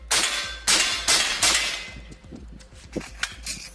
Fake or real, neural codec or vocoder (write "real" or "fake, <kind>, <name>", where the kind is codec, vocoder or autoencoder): real